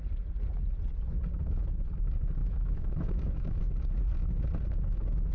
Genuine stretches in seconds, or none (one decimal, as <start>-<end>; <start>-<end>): 0.0-2.4; 3.6-5.3